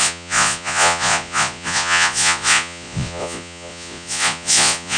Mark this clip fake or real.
fake